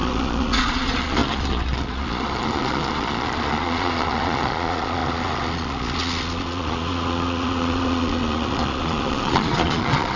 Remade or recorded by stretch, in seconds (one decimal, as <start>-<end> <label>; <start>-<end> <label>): 0.0-10.2 remade